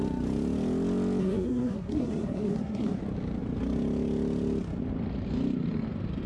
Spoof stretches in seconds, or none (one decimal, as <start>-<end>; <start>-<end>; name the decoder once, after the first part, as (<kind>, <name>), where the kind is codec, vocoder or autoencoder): 1.2-3.0 (codec, SNAC)

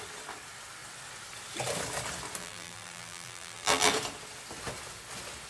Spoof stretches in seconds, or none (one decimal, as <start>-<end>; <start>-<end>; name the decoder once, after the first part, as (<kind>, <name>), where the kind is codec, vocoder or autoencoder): 2.4-3.9 (vocoder, BigVGAN v2)

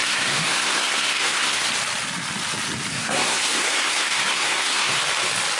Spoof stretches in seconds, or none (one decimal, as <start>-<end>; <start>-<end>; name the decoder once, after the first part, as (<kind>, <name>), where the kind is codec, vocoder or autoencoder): 0.0-1.7 (codec, SNAC); 2.9-5.0

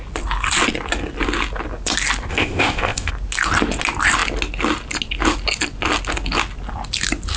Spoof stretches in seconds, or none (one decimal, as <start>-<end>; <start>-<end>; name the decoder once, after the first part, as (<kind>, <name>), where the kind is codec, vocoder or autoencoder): 2.3-3.1 (codec, ZipCodec)

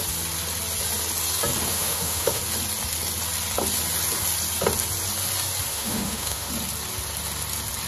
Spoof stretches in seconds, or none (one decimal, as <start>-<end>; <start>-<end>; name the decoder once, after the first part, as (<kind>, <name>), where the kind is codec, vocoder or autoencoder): 1.7-2.4 (autoencoder, DAC-VAE); 5.7-6.5

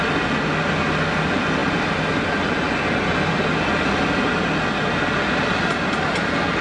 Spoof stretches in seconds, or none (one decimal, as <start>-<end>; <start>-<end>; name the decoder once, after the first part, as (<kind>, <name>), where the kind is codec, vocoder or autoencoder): none

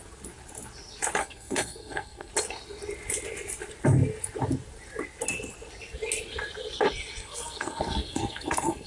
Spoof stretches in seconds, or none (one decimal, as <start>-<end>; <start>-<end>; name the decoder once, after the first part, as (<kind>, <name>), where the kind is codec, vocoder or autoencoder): 1.2-2.3 (codec, SNAC); 7.2-8.9